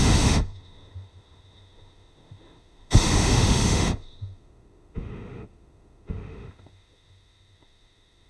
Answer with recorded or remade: remade